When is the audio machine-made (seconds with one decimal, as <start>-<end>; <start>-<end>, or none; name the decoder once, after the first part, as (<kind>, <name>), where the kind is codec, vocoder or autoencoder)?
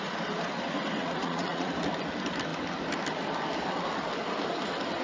1.0-1.7 (vocoder, Vocos)